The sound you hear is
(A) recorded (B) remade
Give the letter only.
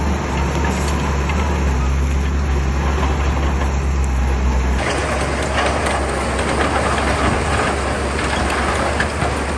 A